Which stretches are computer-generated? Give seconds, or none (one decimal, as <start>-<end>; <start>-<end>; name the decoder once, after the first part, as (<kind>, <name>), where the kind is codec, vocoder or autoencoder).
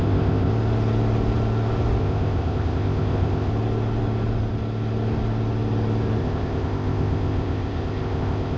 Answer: 0.0-0.5 (codec, ZipCodec); 2.0-3.5; 6.2-8.6